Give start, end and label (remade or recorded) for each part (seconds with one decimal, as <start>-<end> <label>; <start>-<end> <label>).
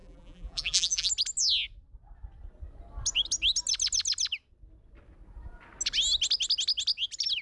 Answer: 0.0-1.1 remade; 1.1-7.4 recorded